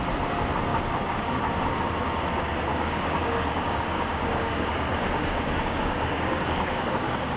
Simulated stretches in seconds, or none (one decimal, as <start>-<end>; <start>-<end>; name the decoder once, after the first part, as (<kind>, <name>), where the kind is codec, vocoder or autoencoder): 0.7-1.4 (codec, DAC); 2.7-7.4